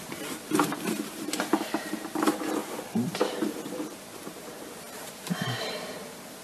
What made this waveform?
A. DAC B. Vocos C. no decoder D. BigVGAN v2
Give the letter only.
D